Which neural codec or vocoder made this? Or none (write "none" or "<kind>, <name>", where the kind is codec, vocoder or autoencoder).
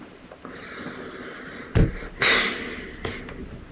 none